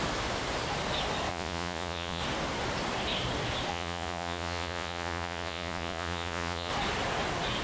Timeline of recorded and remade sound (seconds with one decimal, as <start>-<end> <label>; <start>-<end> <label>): 0.0-1.3 recorded; 1.3-2.2 remade; 2.2-3.7 recorded; 3.7-6.7 remade; 6.7-7.6 recorded